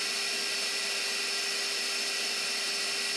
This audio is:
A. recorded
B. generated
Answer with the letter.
A